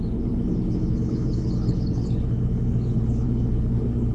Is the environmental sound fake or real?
fake